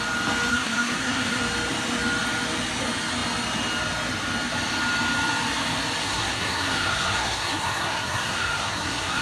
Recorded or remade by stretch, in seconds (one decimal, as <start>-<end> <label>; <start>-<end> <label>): 0.0-0.5 recorded; 0.5-1.4 remade; 1.4-6.0 recorded; 6.0-9.2 remade